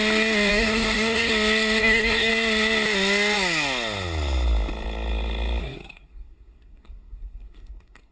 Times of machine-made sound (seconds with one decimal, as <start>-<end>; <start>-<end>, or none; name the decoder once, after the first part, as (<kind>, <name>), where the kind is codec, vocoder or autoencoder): 0.5-1.3 (codec, SNAC); 1.8-2.3; 5.6-8.1